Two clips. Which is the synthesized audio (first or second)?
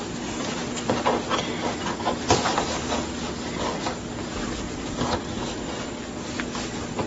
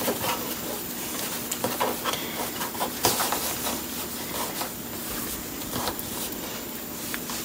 second